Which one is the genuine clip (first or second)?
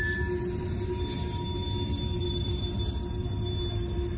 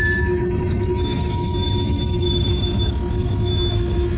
first